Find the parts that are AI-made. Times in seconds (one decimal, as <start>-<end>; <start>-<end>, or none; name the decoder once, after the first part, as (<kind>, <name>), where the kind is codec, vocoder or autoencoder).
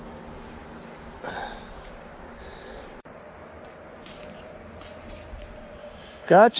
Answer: 5.8-6.6 (codec, DAC)